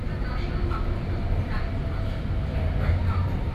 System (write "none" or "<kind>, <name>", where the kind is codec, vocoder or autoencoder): none